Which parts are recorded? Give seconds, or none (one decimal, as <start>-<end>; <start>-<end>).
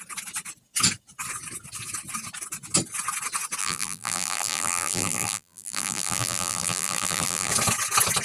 0.0-3.6; 7.5-8.2